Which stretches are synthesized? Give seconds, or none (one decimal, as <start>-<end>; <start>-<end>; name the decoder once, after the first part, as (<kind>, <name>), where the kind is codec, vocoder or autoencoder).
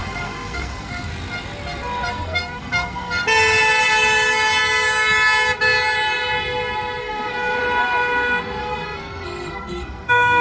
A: 0.0-1.1 (codec, SNAC); 2.1-3.2; 7.0-7.6; 8.6-10.4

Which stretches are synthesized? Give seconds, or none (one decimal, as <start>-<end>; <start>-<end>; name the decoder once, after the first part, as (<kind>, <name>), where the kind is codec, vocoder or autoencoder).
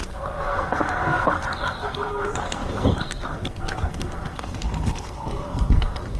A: 0.0-6.2 (codec, SNAC)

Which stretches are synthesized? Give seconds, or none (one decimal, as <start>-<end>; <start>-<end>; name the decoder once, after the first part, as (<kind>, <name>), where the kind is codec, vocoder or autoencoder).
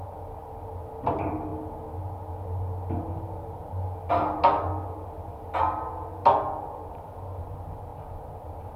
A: none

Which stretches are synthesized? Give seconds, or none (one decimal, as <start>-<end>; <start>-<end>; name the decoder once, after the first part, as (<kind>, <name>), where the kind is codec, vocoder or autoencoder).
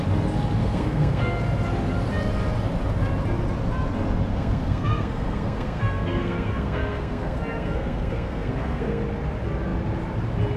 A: 0.6-1.4 (codec, SNAC); 4.3-9.0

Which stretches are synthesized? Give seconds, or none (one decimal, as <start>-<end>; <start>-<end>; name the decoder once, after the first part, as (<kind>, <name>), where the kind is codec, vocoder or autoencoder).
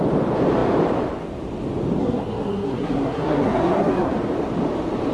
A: 2.0-4.1 (codec, SNAC)